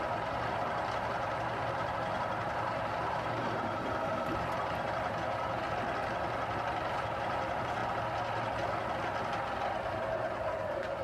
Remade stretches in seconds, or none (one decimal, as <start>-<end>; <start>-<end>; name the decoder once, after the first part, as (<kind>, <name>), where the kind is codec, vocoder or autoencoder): 0.0-5.6 (vocoder, BigVGAN v2); 6.7-7.8; 9.9-11.0